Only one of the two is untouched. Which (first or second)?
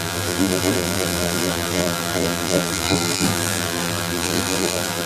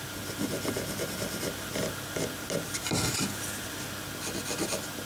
second